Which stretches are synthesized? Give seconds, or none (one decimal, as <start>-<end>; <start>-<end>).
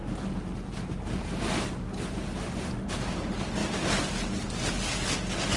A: none